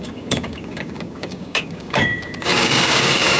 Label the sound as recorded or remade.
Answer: remade